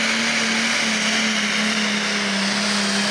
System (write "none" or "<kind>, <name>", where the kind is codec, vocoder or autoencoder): none